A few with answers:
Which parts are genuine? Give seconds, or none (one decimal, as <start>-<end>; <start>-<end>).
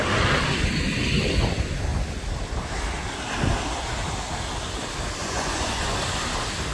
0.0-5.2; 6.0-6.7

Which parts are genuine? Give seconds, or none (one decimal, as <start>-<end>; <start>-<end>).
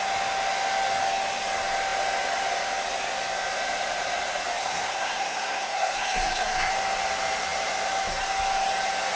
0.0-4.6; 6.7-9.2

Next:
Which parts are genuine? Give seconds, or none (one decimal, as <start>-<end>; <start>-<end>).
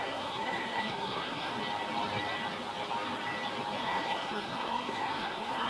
1.5-3.8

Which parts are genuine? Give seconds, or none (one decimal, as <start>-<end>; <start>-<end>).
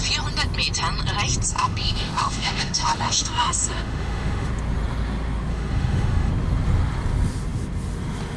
0.0-1.5; 4.5-5.5; 6.3-8.4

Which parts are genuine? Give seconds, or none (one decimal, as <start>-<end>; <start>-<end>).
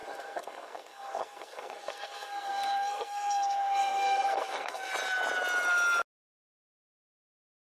4.9-6.3